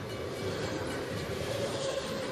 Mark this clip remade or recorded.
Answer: remade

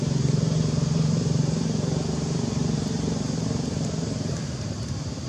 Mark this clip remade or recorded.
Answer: remade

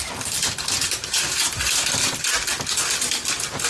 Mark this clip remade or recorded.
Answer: recorded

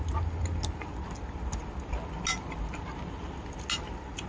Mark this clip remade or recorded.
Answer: recorded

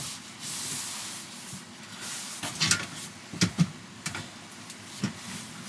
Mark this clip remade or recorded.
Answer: recorded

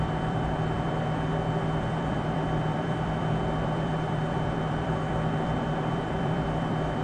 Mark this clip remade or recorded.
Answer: remade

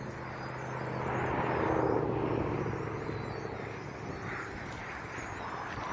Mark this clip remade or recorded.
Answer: recorded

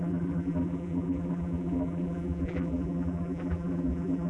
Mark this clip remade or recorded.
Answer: remade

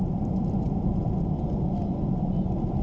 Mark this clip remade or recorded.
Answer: remade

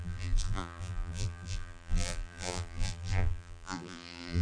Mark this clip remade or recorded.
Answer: remade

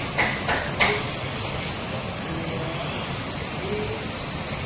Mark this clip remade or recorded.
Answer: recorded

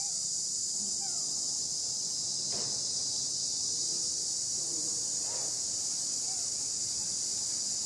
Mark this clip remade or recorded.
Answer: recorded